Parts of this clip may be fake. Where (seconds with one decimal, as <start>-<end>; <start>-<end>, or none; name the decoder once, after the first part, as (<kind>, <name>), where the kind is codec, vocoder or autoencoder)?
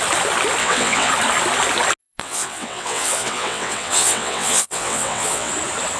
0.6-1.1 (vocoder, WaveNeXt); 2.0-5.5